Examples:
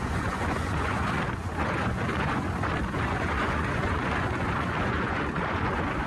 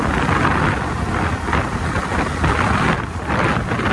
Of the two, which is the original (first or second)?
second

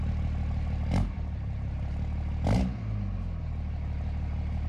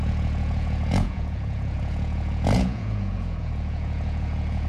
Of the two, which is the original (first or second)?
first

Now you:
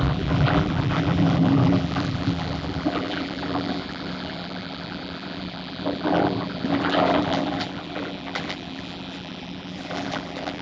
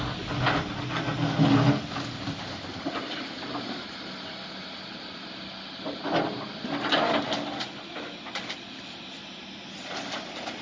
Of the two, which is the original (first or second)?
second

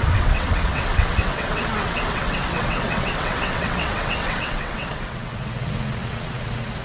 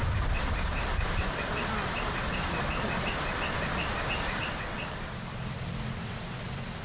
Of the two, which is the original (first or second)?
second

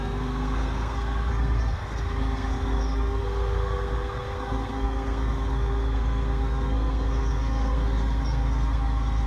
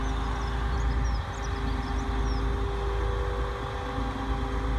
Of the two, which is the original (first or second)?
second